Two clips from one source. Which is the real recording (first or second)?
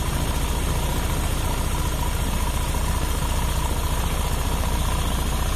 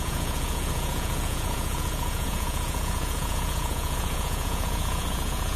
first